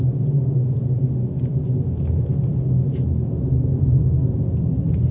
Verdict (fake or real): real